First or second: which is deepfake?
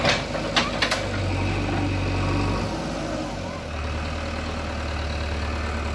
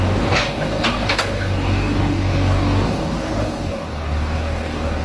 second